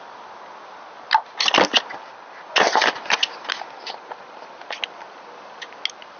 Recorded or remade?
recorded